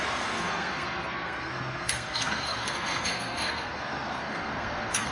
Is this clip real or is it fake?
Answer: fake